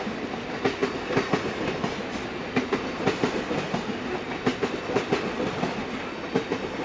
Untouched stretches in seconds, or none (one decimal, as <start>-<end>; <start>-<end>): 0.0-6.8